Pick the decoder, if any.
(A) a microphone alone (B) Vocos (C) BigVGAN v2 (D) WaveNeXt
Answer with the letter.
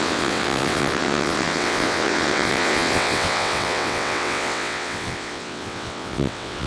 D